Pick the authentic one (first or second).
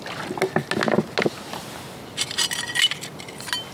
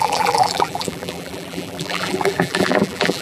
first